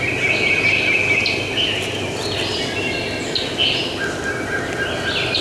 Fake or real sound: real